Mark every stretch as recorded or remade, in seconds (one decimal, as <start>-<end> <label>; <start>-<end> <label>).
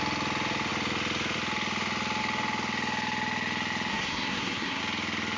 0.0-3.9 recorded; 3.9-4.8 remade; 4.8-5.4 recorded